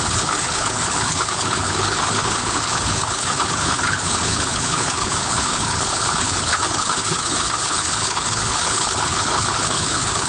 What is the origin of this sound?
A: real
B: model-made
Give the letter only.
B